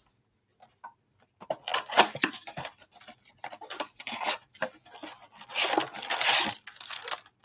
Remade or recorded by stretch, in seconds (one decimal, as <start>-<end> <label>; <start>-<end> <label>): 0.0-7.4 recorded